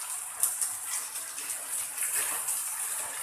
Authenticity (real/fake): real